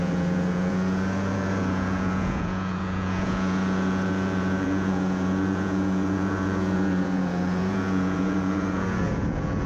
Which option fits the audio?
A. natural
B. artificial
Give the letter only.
B